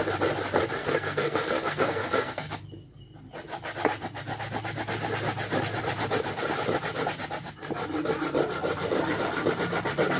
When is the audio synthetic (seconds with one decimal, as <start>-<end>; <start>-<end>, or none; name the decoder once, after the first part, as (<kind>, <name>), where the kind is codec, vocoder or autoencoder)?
0.8-2.6 (codec, SNAC)